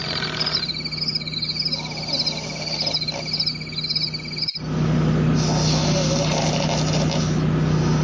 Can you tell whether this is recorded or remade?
recorded